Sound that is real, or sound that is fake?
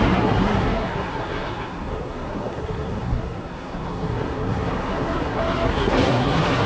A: fake